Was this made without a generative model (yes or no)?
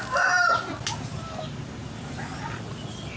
yes